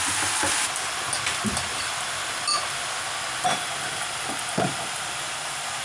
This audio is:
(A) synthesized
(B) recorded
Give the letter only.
B